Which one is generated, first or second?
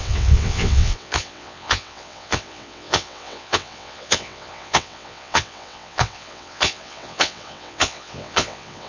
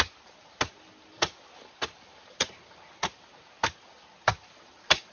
first